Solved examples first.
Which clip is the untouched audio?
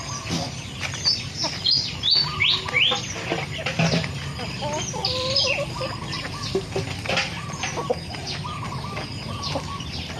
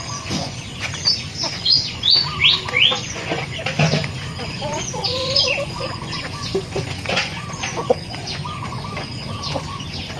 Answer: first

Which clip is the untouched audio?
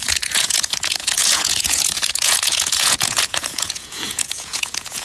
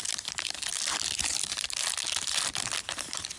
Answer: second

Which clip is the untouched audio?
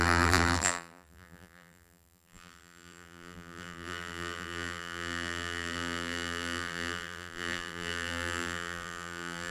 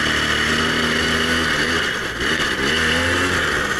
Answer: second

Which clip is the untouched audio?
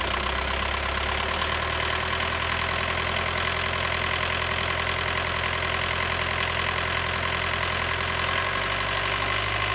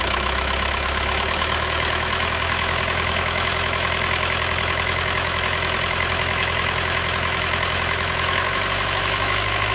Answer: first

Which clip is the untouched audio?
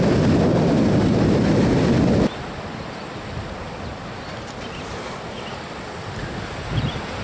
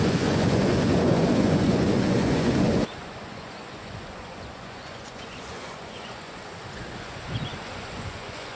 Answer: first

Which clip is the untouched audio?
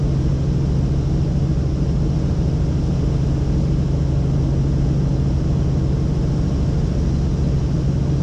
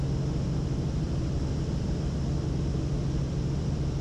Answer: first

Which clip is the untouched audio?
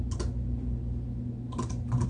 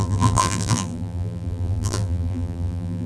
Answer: first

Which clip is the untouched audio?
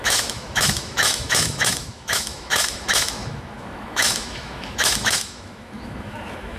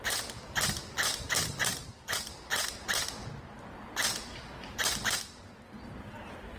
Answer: second